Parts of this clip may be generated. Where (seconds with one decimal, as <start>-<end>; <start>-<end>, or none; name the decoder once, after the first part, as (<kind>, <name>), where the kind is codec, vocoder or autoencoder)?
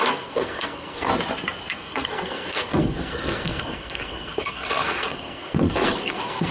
0.0-1.1 (codec, SNAC); 1.7-6.5